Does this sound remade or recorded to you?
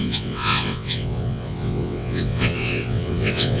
remade